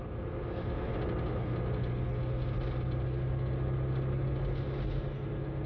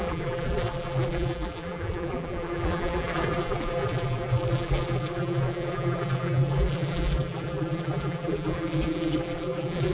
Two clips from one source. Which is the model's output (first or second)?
second